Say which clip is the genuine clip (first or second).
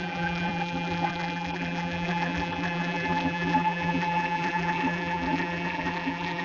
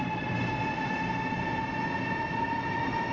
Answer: second